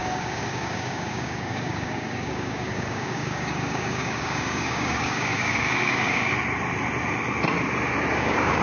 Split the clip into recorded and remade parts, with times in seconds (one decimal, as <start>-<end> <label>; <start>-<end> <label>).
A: 0.0-6.3 remade; 6.3-8.1 recorded; 8.1-8.6 remade